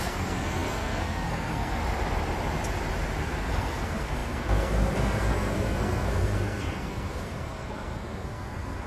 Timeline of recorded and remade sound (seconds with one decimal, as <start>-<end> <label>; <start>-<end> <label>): 0.0-1.8 remade; 1.8-3.2 recorded; 3.2-8.9 remade